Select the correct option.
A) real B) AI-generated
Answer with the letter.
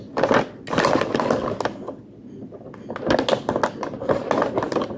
A